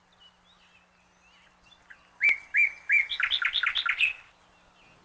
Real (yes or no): yes